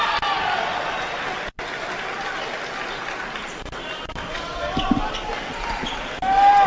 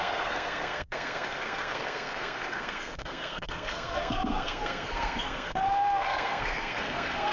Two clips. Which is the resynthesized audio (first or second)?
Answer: second